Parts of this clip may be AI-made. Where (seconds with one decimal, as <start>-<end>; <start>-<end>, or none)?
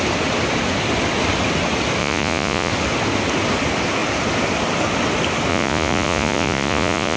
2.0-2.7; 5.5-7.2